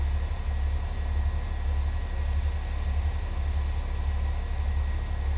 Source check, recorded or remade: recorded